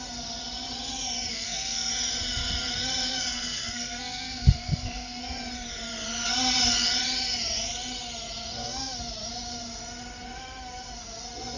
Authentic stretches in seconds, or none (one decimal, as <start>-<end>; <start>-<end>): 0.0-1.3; 1.9-3.1; 5.2-11.6